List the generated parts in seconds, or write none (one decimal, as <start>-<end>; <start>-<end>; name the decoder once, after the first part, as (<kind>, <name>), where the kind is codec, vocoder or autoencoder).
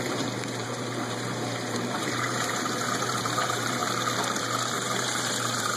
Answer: 0.0-3.8 (vocoder, BigVGAN v2); 4.4-5.8